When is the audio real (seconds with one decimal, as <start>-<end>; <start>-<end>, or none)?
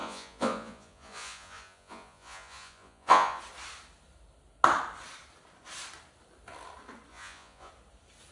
3.4-7.1; 7.7-8.3